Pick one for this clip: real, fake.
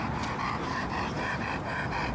real